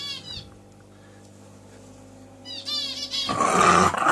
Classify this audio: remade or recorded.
recorded